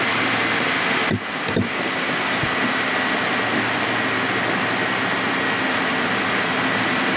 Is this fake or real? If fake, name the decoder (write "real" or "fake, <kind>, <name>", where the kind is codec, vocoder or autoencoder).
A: real